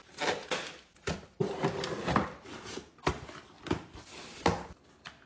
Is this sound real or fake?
real